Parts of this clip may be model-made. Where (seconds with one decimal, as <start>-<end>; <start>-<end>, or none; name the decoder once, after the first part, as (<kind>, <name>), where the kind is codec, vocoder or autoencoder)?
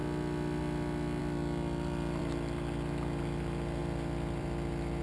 3.8-5.0 (vocoder, BigVGAN v2)